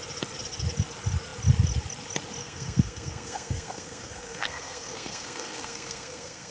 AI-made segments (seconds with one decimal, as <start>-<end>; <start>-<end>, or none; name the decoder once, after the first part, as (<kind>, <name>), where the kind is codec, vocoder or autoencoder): 2.4-6.5 (codec, SNAC)